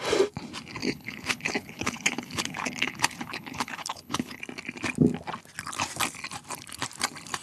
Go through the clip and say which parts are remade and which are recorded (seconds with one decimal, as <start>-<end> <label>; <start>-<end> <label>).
0.0-0.8 recorded; 0.8-4.4 remade; 4.4-7.4 recorded